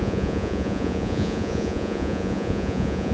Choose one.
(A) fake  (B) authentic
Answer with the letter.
A